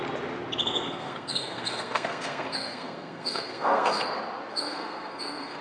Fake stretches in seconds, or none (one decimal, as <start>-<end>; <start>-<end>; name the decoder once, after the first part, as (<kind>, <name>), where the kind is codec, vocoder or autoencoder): 0.6-4.0 (codec, SNAC); 4.5-5.6